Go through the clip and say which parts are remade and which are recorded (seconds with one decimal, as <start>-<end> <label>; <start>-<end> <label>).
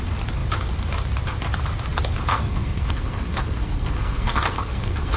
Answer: 0.0-2.3 recorded; 2.3-5.2 remade